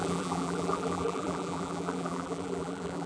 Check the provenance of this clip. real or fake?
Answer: fake